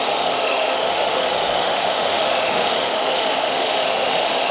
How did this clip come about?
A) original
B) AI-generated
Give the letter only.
B